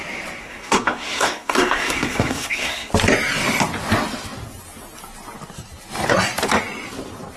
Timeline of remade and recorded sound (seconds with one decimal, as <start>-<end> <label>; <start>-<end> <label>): 0.0-0.4 recorded; 0.4-2.9 remade; 2.9-7.4 recorded